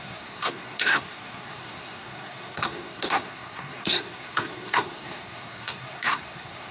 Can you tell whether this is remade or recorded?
remade